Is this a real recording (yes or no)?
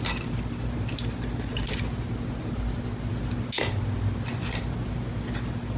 yes